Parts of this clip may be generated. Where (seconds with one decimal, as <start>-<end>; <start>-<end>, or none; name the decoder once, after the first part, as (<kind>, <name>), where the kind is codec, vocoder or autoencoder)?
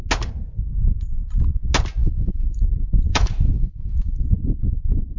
2.0-5.2 (autoencoder, DAC-VAE)